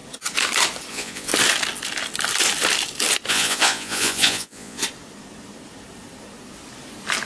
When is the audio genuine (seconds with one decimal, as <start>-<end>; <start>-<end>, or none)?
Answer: 0.0-0.9; 1.3-3.3; 4.8-7.3